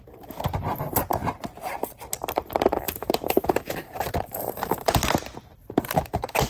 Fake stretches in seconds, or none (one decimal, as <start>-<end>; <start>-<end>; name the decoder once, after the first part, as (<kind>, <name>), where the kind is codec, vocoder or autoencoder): 0.0-6.5 (vocoder, BigVGAN v2)